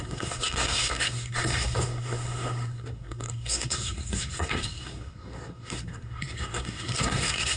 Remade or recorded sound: remade